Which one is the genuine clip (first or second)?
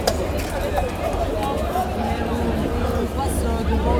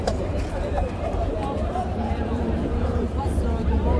first